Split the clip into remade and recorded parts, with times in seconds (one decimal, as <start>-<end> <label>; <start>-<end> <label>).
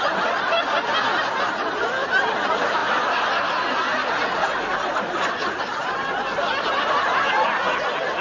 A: 0.0-8.2 recorded